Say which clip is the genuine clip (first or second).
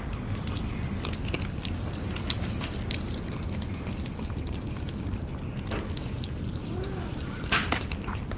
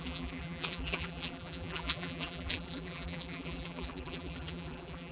first